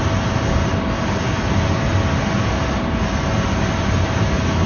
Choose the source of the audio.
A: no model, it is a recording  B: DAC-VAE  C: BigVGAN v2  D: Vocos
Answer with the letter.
A